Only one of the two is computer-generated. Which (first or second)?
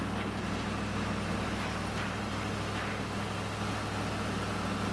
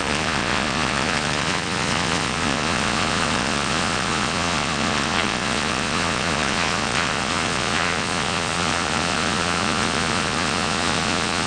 second